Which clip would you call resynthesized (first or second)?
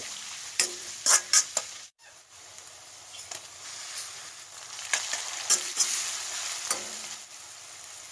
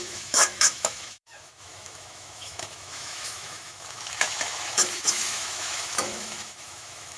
second